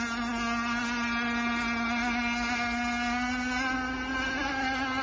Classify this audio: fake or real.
real